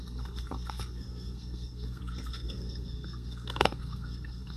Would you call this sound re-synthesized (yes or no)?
yes